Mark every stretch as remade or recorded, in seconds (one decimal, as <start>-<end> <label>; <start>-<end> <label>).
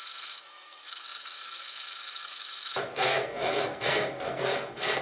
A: 0.0-5.0 remade